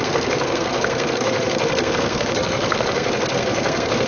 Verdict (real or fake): fake